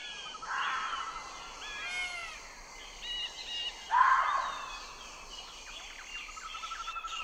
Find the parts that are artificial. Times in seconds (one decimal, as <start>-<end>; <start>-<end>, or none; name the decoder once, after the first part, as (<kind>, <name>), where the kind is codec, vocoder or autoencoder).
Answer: 0.0-1.0 (vocoder, BigVGAN v2); 2.2-2.8; 6.5-7.2